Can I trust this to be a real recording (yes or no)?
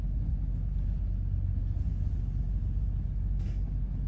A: yes